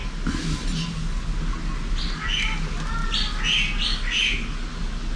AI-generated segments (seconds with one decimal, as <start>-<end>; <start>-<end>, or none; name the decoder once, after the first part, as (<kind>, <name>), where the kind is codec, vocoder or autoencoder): none